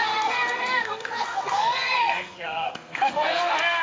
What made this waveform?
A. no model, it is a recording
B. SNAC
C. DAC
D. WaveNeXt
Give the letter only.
B